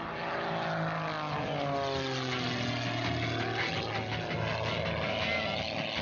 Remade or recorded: recorded